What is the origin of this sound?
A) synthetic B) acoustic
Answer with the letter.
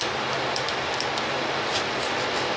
B